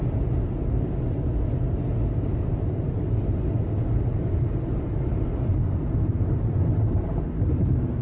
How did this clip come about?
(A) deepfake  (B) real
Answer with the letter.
B